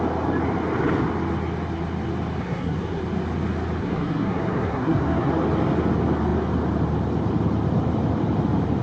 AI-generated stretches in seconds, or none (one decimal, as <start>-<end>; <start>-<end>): 2.4-3.0; 3.8-5.3